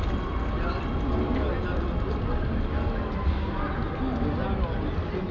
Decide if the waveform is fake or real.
real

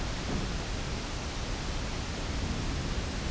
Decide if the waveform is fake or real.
real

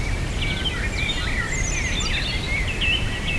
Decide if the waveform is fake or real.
real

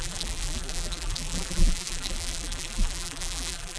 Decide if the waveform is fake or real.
fake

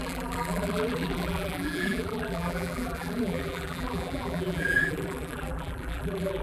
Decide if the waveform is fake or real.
fake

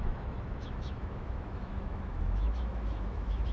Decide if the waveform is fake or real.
fake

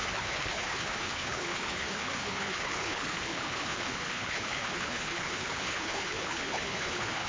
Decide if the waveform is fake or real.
fake